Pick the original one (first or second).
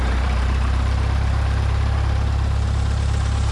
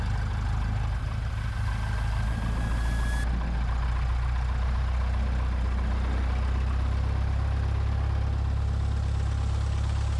second